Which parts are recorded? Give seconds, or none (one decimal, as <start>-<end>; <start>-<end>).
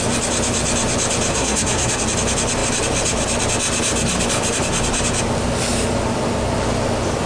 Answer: 0.0-1.3; 2.0-7.3